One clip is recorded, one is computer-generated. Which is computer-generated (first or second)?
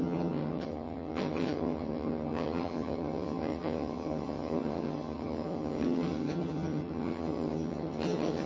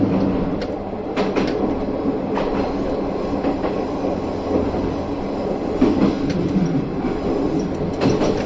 first